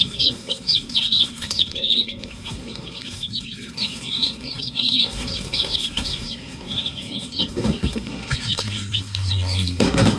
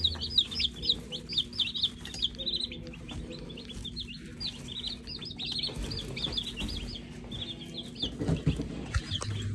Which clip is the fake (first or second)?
first